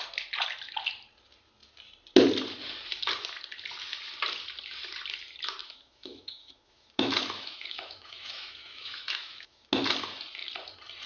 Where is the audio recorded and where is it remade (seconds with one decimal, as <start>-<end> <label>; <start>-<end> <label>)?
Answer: 0.0-5.6 recorded; 5.6-9.7 remade; 9.7-11.1 recorded